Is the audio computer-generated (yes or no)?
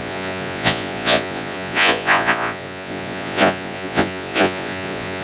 yes